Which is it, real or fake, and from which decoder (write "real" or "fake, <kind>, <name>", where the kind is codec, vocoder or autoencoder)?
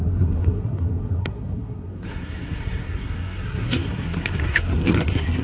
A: fake, codec, SNAC